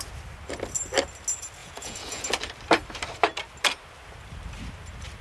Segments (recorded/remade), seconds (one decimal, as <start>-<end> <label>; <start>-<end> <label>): 0.0-1.6 recorded; 1.6-2.2 remade; 2.2-5.2 recorded